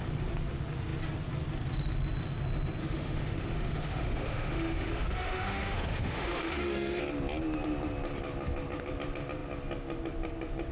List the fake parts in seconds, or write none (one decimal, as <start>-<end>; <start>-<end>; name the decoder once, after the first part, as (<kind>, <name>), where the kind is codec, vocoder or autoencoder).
2.8-7.0 (autoencoder, DAC-VAE)